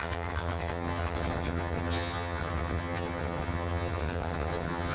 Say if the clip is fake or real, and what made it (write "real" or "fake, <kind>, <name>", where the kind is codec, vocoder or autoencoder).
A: fake, vocoder, HiFi-GAN